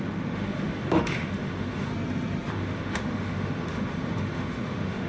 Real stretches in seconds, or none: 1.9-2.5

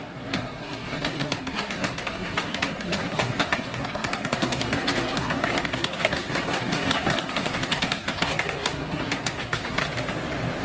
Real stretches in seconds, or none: 9.8-10.6

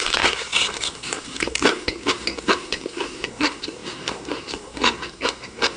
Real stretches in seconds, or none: none